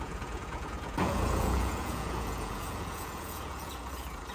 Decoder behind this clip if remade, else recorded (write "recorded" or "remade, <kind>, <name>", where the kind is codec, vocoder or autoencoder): remade, vocoder, Vocos